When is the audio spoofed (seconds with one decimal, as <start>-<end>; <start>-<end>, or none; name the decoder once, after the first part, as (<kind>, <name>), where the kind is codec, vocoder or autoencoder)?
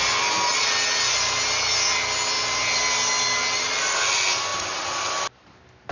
none